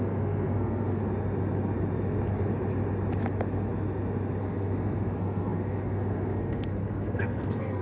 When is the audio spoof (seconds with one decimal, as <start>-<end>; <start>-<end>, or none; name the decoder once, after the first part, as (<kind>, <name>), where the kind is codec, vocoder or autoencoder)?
0.0-1.0 (codec, SNAC); 4.4-7.8